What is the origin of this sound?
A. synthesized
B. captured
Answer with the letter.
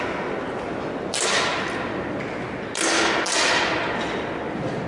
B